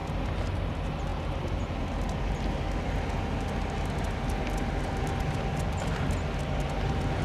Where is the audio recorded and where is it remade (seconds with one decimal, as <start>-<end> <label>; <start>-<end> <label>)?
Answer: 0.0-7.2 recorded